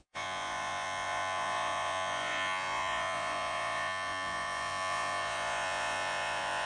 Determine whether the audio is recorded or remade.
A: remade